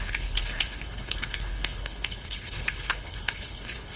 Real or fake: fake